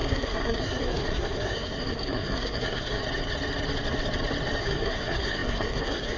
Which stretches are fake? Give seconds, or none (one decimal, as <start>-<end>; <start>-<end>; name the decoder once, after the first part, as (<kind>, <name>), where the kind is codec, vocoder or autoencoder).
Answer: 0.0-3.0 (codec, SNAC); 4.6-6.2